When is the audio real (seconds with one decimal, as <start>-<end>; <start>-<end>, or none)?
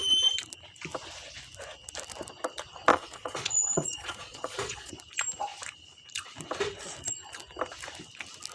0.0-2.9; 4.9-8.5